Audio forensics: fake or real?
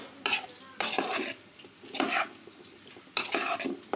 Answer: real